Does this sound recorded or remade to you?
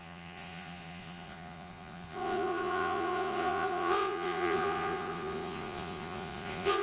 remade